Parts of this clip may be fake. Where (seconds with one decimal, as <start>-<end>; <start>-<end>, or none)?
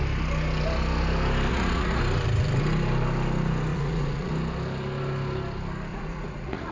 1.5-2.0; 3.7-4.3; 5.9-6.7